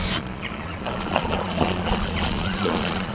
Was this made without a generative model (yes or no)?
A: no